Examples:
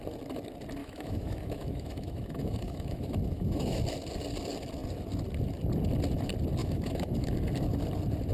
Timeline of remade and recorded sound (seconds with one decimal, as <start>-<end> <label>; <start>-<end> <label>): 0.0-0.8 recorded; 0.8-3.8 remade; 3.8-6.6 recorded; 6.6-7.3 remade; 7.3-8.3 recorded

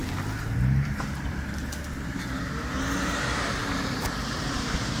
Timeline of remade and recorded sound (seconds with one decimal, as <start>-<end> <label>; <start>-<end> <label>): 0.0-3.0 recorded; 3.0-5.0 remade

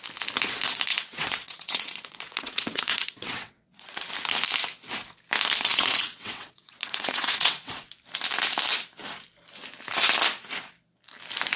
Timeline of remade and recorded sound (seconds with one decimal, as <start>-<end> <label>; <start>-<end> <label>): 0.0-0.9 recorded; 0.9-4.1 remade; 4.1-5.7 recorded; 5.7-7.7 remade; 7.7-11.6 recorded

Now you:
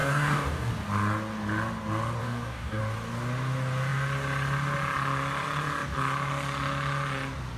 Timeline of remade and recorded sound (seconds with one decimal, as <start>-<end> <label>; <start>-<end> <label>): 0.0-0.7 remade; 0.7-2.2 recorded; 2.2-2.8 remade; 2.8-7.6 recorded

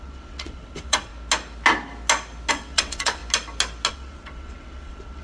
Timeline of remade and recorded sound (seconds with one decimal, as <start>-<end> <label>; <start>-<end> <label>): 0.0-1.1 remade; 1.1-2.5 recorded; 2.5-3.2 remade; 3.2-3.9 recorded; 3.9-5.2 remade

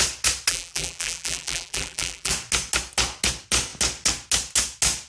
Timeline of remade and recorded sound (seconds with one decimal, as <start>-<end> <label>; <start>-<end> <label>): 0.0-0.5 recorded; 0.5-2.3 remade; 2.3-5.1 recorded